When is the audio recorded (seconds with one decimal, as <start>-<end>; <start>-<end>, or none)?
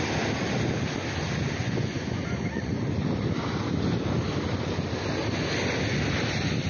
0.0-1.6; 2.8-6.7